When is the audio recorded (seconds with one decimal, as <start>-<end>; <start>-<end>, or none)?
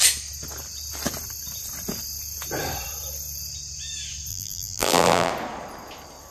0.0-4.3; 5.3-6.3